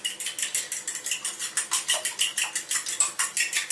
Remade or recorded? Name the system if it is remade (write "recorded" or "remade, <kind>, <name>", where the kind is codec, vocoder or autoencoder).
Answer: recorded